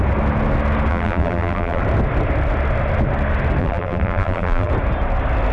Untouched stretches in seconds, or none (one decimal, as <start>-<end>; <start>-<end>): 0.0-0.9; 1.8-3.6; 4.7-5.5